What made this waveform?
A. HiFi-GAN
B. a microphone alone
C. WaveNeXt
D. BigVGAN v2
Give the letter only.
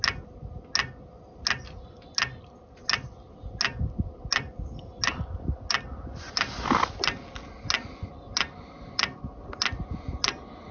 B